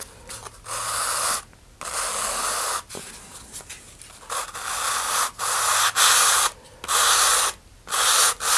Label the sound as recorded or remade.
recorded